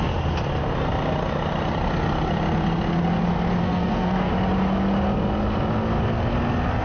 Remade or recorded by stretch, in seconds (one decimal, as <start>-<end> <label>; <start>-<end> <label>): 0.0-3.6 recorded; 3.6-4.3 remade; 4.3-6.8 recorded